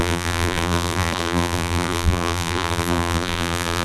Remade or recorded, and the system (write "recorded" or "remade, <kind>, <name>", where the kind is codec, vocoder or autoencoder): remade, vocoder, BigVGAN v2